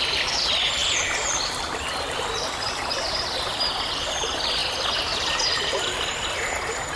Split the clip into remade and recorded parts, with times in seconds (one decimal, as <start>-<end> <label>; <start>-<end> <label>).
0.0-4.6 remade; 4.6-5.4 recorded; 5.4-7.0 remade